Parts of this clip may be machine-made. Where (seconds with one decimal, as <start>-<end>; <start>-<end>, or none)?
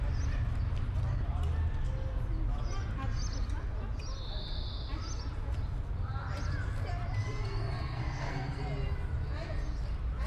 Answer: 7.2-8.6